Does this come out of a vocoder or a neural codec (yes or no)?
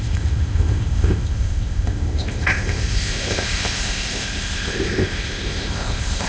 yes